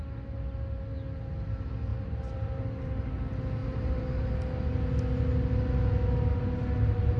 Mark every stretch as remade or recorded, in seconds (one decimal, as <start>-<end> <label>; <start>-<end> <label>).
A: 0.0-1.9 recorded; 1.9-3.1 remade; 3.1-3.6 recorded; 3.6-4.3 remade; 4.3-7.2 recorded